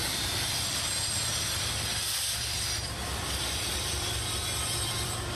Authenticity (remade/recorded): remade